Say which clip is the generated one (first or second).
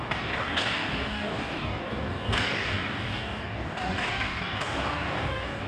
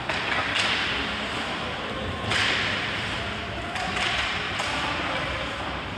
first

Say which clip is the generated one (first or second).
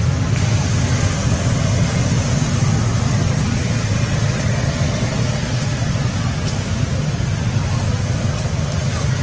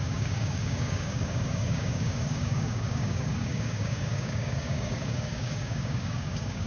second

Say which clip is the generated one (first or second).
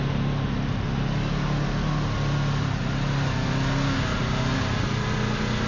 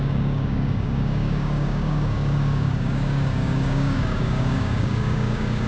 second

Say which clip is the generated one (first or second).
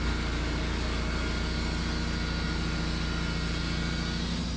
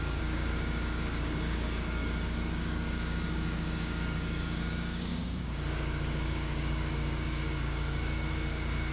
second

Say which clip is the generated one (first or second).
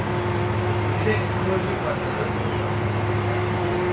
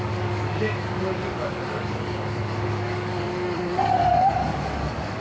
second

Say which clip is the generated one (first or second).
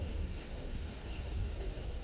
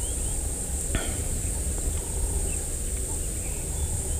first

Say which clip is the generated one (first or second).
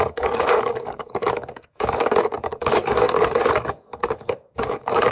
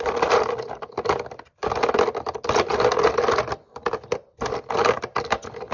first